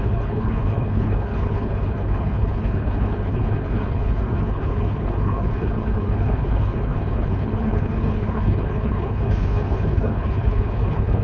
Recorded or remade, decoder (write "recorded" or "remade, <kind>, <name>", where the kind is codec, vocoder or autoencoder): remade, codec, HILCodec